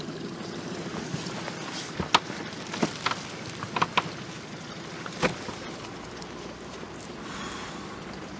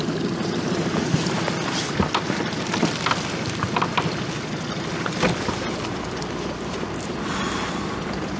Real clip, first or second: first